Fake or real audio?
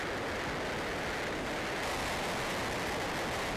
real